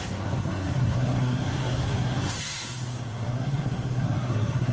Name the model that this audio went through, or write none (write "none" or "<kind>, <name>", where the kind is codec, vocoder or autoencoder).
codec, SNAC